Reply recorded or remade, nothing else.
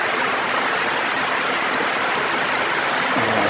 recorded